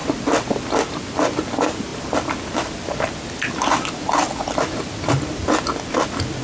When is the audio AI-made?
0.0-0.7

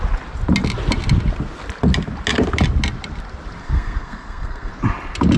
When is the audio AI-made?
3.6-4.7

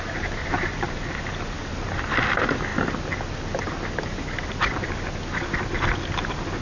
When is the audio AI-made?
0.4-1.2; 1.6-2.2

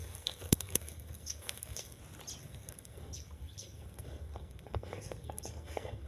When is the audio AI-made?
0.0-2.0; 2.4-6.1

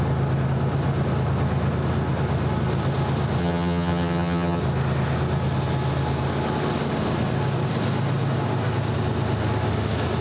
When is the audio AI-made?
3.4-4.6

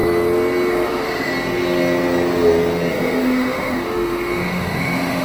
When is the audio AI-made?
0.7-1.3; 2.9-5.2